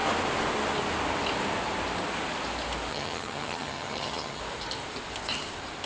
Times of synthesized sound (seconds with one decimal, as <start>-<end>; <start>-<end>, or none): 2.9-4.4